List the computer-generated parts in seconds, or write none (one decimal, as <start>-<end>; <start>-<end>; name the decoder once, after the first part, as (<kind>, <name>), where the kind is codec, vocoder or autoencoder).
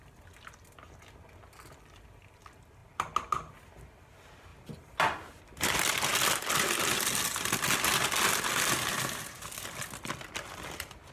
none